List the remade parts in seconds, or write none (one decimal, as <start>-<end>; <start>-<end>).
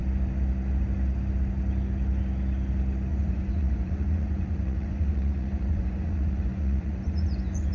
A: 3.1-7.7